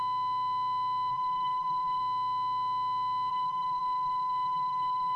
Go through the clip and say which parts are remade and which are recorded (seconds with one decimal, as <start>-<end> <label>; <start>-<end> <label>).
0.0-1.1 recorded; 1.1-2.0 remade; 2.0-3.3 recorded; 3.3-5.2 remade